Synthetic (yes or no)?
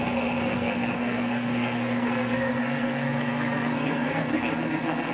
yes